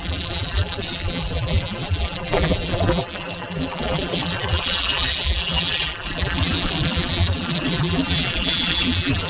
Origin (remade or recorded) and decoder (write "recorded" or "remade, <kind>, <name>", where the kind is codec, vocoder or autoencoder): remade, vocoder, BigVGAN v2